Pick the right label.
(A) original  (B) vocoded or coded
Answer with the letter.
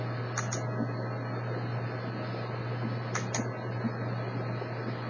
A